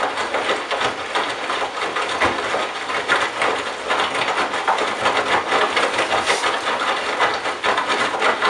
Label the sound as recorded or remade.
recorded